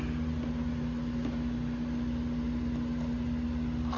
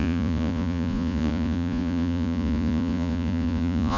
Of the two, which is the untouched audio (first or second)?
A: first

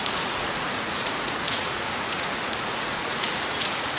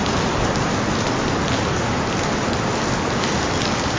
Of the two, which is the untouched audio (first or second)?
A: second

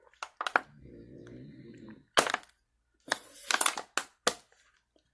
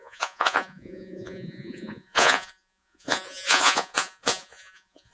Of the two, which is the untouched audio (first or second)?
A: first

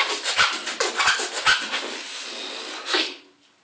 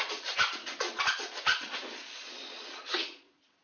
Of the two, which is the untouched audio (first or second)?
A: first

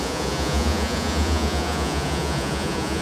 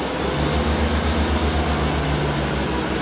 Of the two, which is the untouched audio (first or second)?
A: second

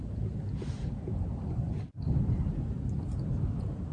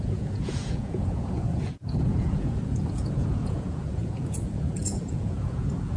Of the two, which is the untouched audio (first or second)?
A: first